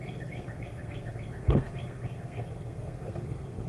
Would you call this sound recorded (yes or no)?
no